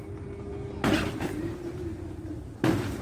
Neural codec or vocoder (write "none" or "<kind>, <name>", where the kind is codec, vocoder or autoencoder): none